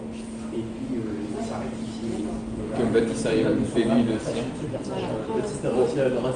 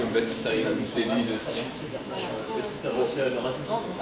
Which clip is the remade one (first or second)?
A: second